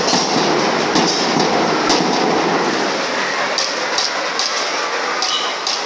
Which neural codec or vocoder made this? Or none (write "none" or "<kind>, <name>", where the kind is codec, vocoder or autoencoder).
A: none